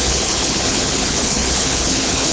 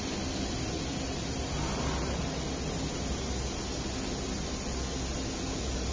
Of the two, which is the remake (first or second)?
first